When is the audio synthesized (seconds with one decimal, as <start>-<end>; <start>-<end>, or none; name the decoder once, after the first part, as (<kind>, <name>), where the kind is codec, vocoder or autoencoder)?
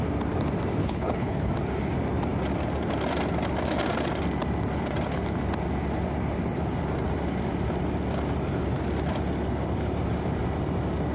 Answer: 0.8-1.5 (codec, HILCodec)